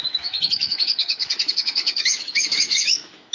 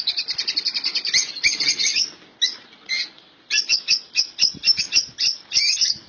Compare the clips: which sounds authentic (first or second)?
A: second